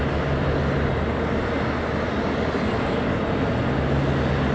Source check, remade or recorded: recorded